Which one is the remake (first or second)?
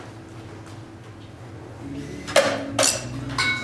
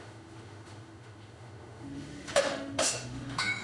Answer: second